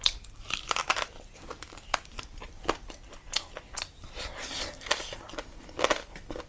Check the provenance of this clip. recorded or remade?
remade